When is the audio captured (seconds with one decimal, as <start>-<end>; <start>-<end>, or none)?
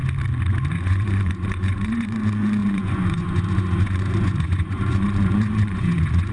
0.0-0.7